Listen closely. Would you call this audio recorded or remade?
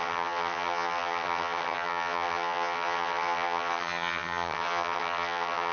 remade